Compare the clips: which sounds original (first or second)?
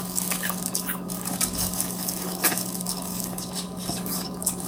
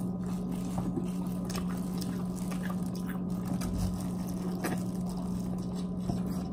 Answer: second